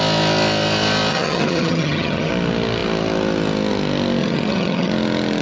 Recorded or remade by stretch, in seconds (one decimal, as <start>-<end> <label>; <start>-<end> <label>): 0.0-1.1 recorded; 1.1-2.3 remade; 2.3-4.2 recorded; 4.2-4.9 remade; 4.9-5.4 recorded